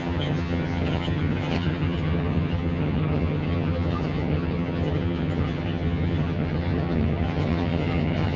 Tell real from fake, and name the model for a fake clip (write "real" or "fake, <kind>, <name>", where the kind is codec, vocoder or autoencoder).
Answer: fake, vocoder, HiFi-GAN